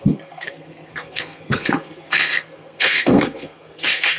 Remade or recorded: remade